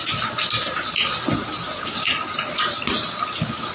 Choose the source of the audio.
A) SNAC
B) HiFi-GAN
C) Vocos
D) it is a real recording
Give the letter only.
D